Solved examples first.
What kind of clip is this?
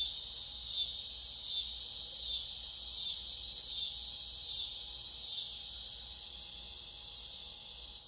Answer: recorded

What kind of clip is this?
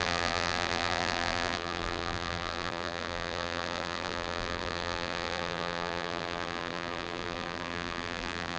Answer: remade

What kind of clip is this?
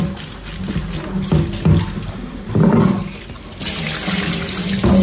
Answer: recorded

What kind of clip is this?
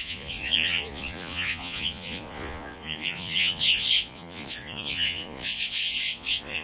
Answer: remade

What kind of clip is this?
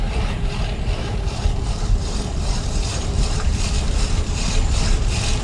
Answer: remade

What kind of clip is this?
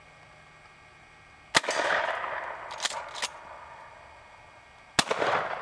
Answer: recorded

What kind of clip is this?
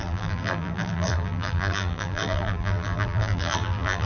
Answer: remade